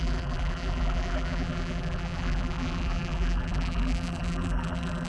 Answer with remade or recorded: remade